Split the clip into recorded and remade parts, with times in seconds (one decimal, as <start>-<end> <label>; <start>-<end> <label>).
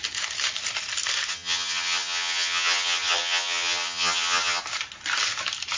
0.0-1.3 recorded; 1.3-4.6 remade; 4.6-5.8 recorded